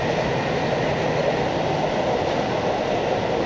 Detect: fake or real real